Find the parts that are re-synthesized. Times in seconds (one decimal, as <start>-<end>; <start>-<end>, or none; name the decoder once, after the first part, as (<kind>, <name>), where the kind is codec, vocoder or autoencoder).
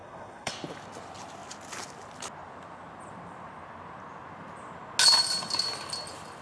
0.0-0.5 (codec, SNAC)